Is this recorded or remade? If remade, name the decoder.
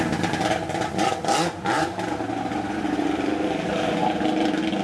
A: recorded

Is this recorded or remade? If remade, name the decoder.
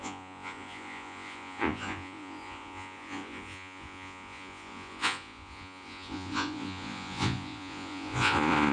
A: remade, vocoder, Vocos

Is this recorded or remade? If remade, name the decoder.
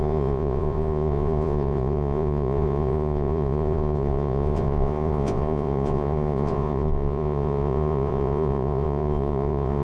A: remade, vocoder, Vocos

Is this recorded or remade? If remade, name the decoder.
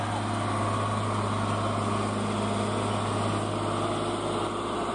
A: recorded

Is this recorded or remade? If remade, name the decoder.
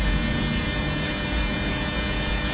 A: remade, vocoder, Vocos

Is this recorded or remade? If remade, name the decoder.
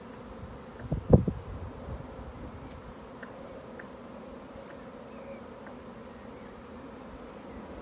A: recorded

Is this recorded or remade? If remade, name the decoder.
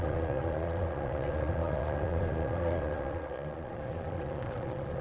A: remade, vocoder, Vocos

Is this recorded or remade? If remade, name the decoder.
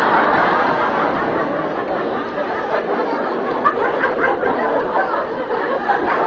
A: recorded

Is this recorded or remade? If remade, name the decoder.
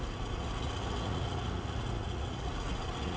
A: remade, vocoder, Vocos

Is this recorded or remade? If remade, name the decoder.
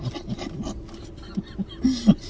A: recorded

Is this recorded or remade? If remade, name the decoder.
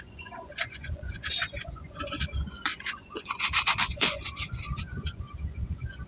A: remade, vocoder, Vocos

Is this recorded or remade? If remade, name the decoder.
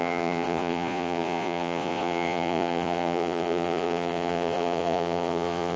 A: remade, vocoder, Vocos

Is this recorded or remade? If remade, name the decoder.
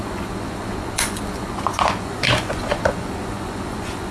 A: remade, vocoder, Vocos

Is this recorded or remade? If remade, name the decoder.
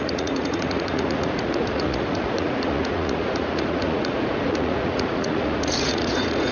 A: remade, vocoder, Vocos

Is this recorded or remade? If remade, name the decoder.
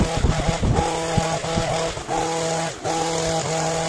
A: recorded